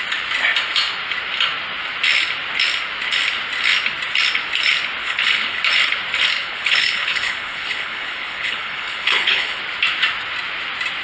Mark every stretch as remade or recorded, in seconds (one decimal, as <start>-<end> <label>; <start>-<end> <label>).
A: 0.0-5.0 recorded; 5.0-5.6 remade; 5.6-6.4 recorded; 6.4-9.6 remade; 9.6-11.0 recorded